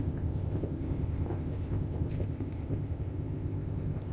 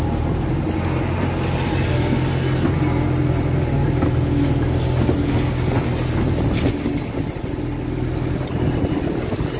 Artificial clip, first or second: first